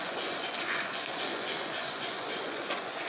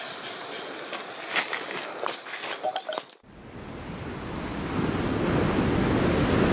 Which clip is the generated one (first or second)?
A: first